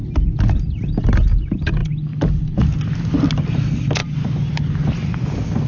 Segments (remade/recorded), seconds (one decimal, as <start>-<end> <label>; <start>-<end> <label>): 0.0-0.8 remade; 0.8-4.0 recorded; 4.0-4.7 remade; 4.7-5.7 recorded

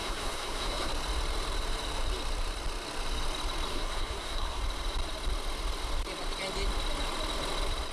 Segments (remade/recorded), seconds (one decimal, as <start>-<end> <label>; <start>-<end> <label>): 0.0-0.9 remade; 0.9-3.7 recorded; 3.7-4.6 remade; 4.6-7.9 recorded

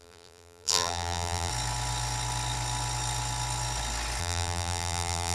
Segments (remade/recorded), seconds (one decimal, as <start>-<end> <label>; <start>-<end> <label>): 0.0-1.5 remade; 1.5-4.2 recorded; 4.2-5.3 remade

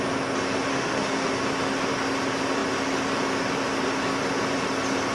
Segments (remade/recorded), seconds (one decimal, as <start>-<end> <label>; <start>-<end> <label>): 0.0-0.7 recorded; 0.7-1.3 remade; 1.3-5.1 recorded

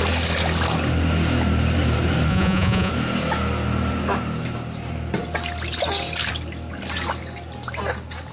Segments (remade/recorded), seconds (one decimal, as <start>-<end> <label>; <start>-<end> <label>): 0.0-2.3 recorded; 2.3-2.9 remade; 2.9-8.3 recorded